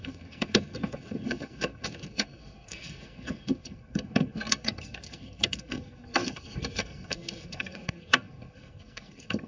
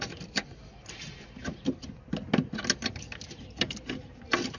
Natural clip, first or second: second